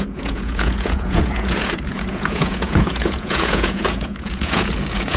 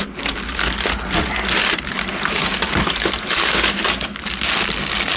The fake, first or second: first